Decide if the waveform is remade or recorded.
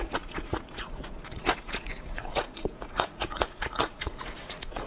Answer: remade